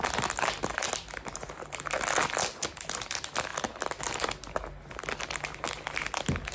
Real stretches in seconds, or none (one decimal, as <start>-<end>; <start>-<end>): 0.0-6.5